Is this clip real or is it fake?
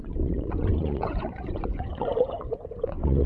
fake